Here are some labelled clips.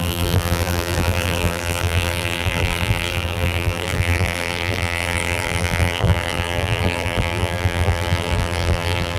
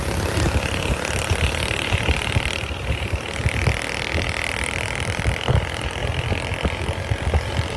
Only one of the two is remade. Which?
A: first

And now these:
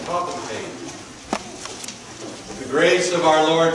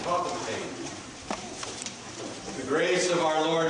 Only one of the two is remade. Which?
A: second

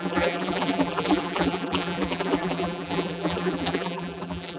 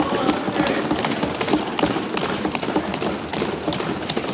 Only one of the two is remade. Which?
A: first